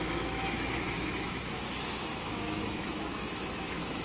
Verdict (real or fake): fake